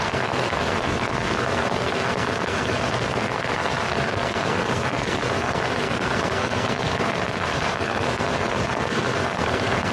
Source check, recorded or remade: remade